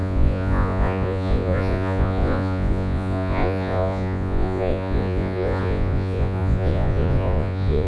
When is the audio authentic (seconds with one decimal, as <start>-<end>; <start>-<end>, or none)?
none